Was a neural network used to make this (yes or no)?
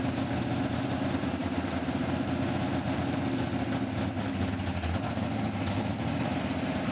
no